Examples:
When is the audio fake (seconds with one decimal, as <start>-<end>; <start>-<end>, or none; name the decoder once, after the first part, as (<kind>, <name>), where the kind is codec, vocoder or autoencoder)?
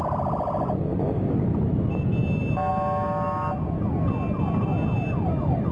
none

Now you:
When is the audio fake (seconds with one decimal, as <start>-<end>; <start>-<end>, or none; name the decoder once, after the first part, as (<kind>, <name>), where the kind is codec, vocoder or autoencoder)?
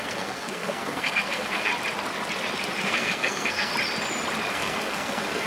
0.0-1.7 (codec, SNAC); 2.8-3.7; 4.5-5.5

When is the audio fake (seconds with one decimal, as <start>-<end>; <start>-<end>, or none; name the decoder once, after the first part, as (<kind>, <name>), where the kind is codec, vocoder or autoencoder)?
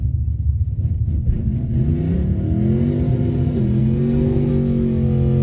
3.8-4.5 (codec, SNAC)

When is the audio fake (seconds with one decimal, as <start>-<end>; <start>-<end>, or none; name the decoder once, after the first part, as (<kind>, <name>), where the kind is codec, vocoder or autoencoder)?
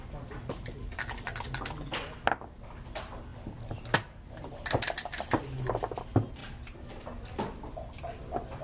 none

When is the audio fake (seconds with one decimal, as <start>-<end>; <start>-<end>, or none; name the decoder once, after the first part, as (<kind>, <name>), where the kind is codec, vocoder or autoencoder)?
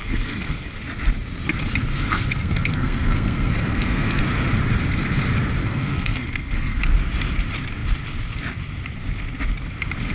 0.0-0.8 (codec, SNAC); 1.9-4.2; 5.6-6.8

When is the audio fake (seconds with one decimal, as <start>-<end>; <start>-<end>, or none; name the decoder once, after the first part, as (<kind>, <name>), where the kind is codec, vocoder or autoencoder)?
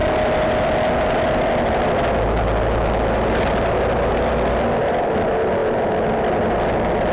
none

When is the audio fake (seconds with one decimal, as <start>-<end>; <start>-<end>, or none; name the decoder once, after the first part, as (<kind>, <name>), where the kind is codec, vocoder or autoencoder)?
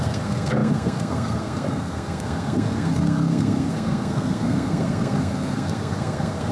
0.0-6.5 (codec, SNAC)